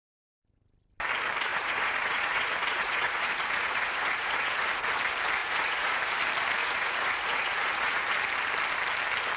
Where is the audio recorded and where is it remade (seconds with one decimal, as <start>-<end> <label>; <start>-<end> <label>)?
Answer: 0.0-1.5 recorded; 1.5-5.0 remade; 5.0-5.4 recorded; 5.4-6.0 remade; 6.0-6.6 recorded; 6.6-8.1 remade; 8.1-9.4 recorded